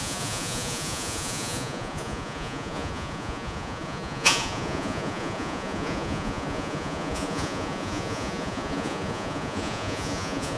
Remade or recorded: remade